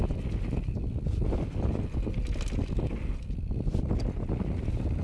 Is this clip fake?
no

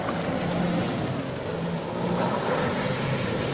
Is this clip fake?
no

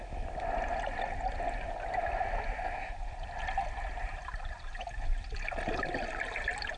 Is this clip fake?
no